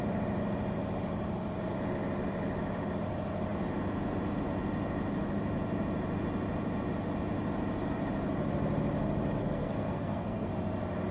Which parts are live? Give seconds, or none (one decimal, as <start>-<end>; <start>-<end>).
0.0-9.4; 10.5-11.1